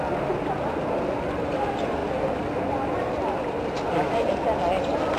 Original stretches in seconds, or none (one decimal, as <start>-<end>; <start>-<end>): 0.0-5.2